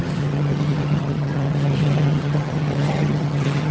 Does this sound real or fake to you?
fake